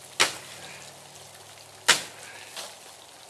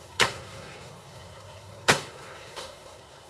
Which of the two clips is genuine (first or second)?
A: first